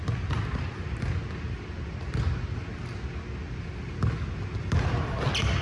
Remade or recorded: recorded